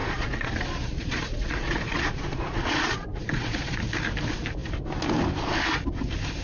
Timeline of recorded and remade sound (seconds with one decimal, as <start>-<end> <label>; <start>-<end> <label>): 0.0-3.8 remade; 3.8-6.4 recorded